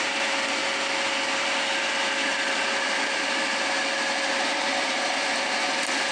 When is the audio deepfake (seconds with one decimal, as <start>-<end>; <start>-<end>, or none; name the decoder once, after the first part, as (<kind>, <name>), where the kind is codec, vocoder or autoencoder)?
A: 0.0-0.6 (vocoder, BigVGAN v2); 4.3-6.1